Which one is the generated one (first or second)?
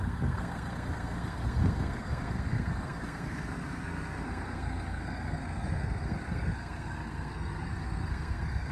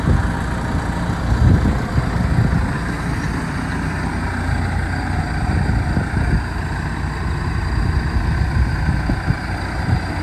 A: first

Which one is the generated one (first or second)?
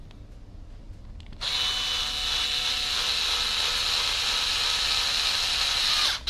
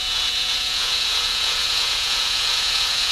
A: second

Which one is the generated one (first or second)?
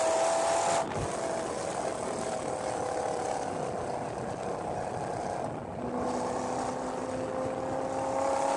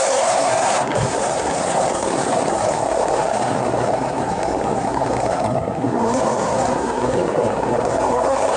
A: second